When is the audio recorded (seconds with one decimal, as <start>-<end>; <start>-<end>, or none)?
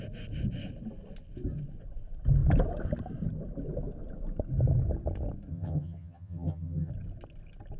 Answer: 0.0-5.5; 6.9-7.8